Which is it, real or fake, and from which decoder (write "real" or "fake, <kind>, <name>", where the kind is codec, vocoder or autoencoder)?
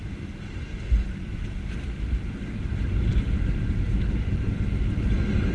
real